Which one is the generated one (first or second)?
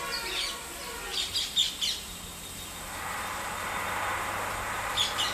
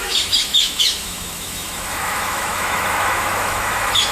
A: second